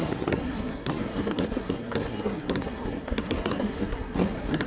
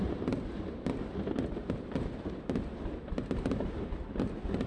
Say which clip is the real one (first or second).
second